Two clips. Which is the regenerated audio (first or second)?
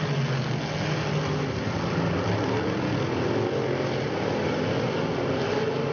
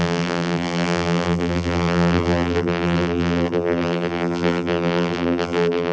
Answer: second